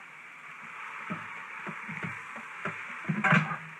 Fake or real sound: real